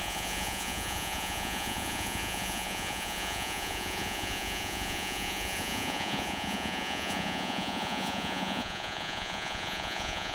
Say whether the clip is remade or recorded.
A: remade